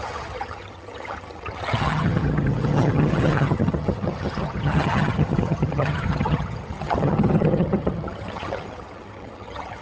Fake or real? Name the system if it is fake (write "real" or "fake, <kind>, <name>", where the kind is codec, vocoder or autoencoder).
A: fake, vocoder, HiFi-GAN